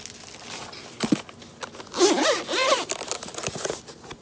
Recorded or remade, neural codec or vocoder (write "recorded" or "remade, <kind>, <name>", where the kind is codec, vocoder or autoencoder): recorded